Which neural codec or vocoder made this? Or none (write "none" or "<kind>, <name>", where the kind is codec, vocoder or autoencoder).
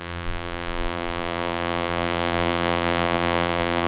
vocoder, BigVGAN v2